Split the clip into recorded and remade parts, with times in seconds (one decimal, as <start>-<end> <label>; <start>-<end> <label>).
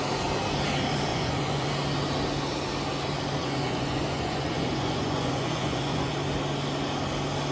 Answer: 0.0-1.1 recorded; 1.1-1.7 remade; 1.7-3.4 recorded; 3.4-6.1 remade; 6.1-7.5 recorded